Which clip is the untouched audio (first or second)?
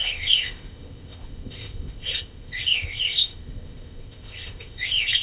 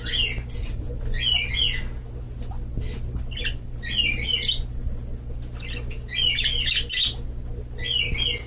second